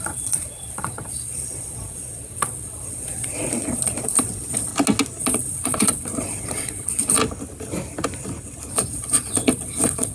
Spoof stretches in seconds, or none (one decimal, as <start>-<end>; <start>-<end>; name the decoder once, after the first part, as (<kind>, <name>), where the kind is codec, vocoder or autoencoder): 0.0-4.7 (vocoder, Vocos); 5.2-7.2; 8.7-10.1